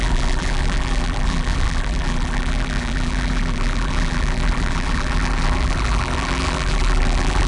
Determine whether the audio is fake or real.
fake